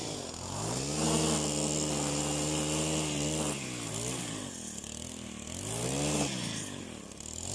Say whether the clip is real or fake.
real